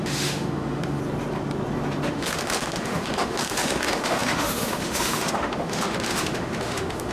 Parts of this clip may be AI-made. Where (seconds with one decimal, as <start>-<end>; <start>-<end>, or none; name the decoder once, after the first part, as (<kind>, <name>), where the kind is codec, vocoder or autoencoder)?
0.0-1.0 (autoencoder, DAC-VAE); 2.1-7.1